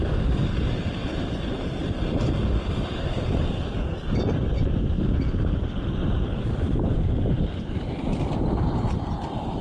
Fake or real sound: fake